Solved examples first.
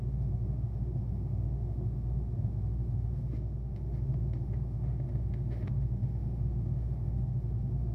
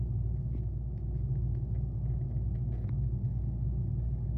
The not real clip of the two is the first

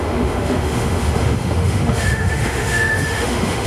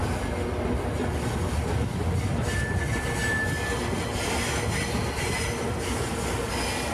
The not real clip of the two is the first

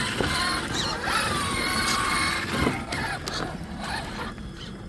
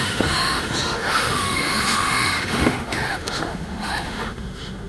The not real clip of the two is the second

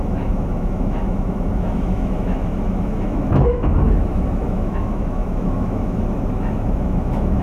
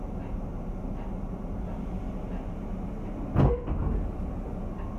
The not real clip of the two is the first